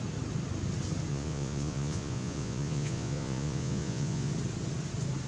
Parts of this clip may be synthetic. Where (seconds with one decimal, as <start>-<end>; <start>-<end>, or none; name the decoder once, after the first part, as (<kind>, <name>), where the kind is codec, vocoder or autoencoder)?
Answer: 1.1-4.3 (vocoder, Vocos)

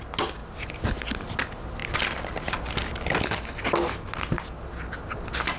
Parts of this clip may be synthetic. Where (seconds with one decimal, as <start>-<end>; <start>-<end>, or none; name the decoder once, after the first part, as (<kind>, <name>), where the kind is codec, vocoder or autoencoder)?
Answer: none

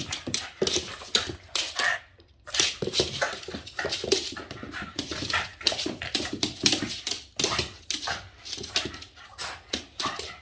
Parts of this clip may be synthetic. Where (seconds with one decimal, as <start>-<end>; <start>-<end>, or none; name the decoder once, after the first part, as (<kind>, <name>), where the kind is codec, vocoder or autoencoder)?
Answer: none

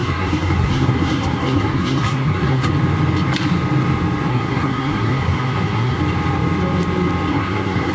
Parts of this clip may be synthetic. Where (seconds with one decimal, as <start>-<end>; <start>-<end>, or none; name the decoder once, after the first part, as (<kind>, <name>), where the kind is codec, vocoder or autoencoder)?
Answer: 0.0-2.7 (codec, SNAC); 4.3-6.0; 7.3-7.9

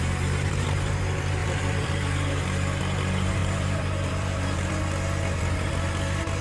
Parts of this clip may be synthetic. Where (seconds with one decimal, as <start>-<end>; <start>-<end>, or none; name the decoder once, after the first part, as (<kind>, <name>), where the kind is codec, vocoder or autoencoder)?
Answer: 1.4-1.9 (vocoder, BigVGAN v2); 3.4-4.7

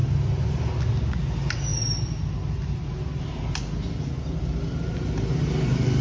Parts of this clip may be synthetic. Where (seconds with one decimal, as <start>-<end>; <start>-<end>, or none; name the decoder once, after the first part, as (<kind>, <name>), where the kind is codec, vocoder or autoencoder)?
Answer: none

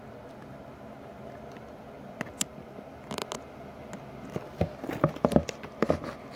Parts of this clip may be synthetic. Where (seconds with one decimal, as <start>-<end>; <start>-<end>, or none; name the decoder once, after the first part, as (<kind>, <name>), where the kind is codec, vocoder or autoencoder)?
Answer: none